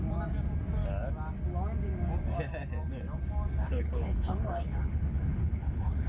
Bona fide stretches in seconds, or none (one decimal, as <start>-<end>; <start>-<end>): 0.0-3.6